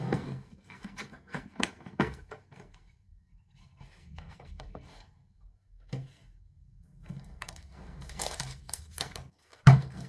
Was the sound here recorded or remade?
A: remade